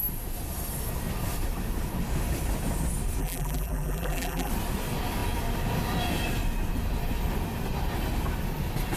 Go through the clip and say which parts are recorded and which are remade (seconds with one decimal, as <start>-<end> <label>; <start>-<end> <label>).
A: 0.0-3.2 recorded; 3.2-4.5 remade; 4.5-9.0 recorded